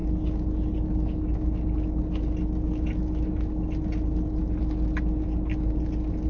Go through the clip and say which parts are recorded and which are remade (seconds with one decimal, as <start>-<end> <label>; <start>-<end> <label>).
0.0-6.3 recorded